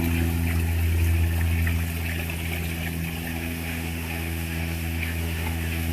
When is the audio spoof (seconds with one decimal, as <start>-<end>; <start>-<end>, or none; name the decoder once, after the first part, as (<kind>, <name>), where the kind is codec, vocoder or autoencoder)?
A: 3.3-5.9 (autoencoder, DAC-VAE)